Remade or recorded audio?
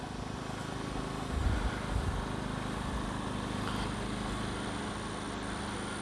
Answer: recorded